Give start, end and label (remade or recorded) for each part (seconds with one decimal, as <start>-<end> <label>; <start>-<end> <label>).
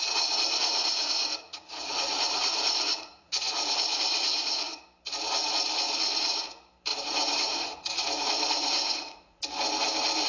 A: 0.0-0.8 recorded; 0.8-4.8 remade; 4.8-6.9 recorded; 6.9-9.4 remade; 9.4-10.3 recorded